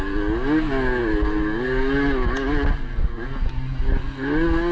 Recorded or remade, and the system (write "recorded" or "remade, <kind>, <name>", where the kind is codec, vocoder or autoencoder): recorded